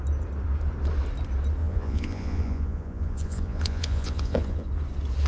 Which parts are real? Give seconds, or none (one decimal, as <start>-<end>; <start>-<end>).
0.0-1.6; 4.7-5.3